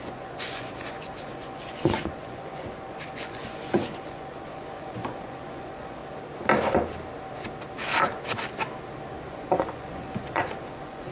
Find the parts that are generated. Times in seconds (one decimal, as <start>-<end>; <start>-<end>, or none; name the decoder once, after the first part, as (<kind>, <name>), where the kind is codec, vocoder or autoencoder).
0.0-6.0 (vocoder, Vocos); 9.3-11.1